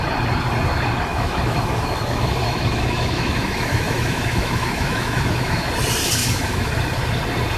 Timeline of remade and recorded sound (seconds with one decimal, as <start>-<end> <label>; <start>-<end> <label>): 0.0-1.1 recorded; 1.1-5.7 remade; 5.7-6.2 recorded; 6.2-6.7 remade; 6.7-7.6 recorded